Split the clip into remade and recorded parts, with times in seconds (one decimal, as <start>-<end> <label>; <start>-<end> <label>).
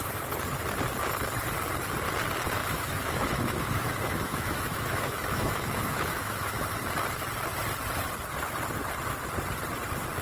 0.0-2.6 recorded; 2.6-6.7 remade; 6.7-10.2 recorded